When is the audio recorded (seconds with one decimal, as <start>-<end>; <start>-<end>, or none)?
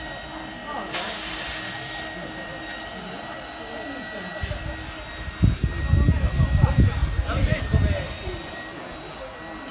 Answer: 0.0-9.7